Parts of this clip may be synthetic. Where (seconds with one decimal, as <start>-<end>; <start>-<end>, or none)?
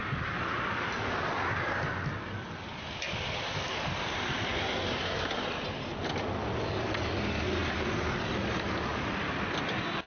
2.7-6.0